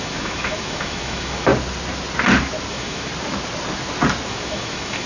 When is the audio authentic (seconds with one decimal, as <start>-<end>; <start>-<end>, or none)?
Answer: 1.5-2.7; 3.1-4.3